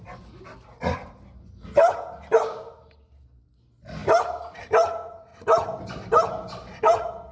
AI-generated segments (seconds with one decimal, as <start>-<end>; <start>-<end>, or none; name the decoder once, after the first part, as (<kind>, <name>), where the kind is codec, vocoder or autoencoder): none